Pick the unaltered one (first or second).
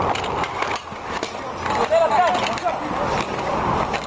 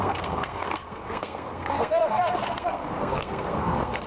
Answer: first